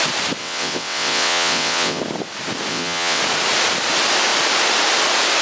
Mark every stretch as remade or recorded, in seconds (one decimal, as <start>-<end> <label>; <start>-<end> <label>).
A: 0.0-0.4 recorded; 0.4-2.0 remade; 2.0-2.7 recorded; 2.7-3.2 remade; 3.2-5.4 recorded